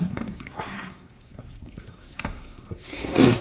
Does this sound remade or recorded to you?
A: remade